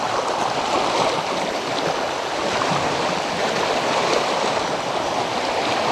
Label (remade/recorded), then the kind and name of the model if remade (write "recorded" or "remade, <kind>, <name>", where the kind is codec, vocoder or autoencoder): recorded